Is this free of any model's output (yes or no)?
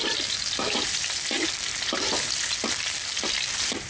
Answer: yes